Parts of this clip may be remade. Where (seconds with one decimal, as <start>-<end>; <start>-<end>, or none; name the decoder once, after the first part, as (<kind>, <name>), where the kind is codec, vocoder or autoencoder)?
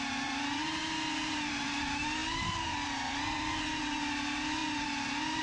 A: 0.0-5.4 (vocoder, BigVGAN v2)